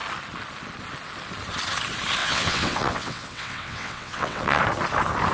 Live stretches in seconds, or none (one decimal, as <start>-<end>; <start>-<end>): 0.0-2.2; 4.6-5.3